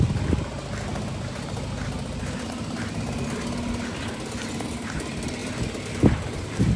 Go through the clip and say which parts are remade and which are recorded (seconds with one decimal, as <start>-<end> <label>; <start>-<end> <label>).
0.0-6.8 recorded